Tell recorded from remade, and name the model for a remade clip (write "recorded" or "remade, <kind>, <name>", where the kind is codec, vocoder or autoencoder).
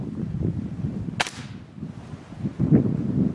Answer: recorded